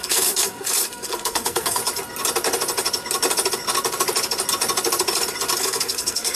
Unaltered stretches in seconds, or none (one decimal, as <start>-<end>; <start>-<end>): 1.8-5.6

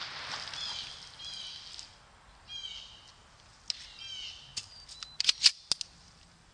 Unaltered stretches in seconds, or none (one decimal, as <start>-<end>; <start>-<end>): 0.0-6.5

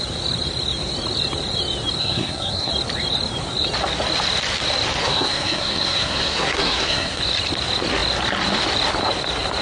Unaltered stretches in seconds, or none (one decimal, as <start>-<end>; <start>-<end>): 0.0-2.0; 2.7-5.0; 7.2-9.6

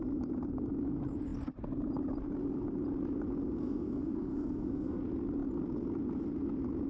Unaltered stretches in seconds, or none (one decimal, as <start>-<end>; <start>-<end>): 0.0-3.6; 5.0-6.9

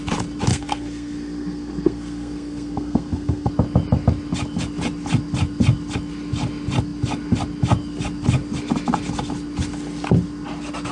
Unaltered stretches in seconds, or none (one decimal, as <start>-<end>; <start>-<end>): 0.0-0.5; 3.5-10.9

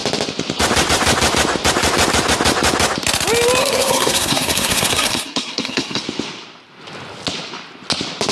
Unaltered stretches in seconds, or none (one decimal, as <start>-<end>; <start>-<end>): 0.0-3.6; 6.0-8.3